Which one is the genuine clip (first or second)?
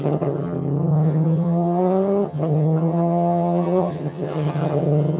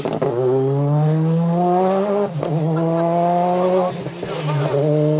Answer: second